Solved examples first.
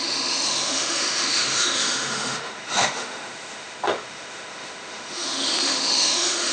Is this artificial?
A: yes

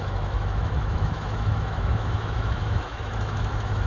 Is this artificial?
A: yes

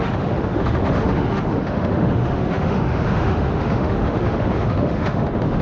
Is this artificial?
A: yes